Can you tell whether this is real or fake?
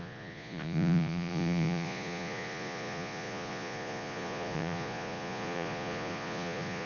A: fake